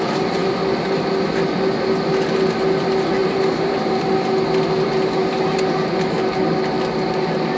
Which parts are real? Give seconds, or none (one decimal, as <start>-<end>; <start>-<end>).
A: 0.0-3.2; 4.0-7.6